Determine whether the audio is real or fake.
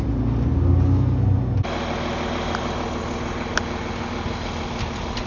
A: real